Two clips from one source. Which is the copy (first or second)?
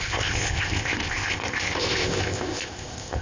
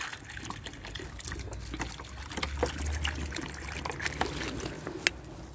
first